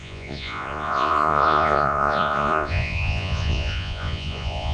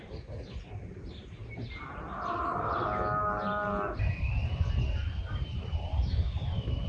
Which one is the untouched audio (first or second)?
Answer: second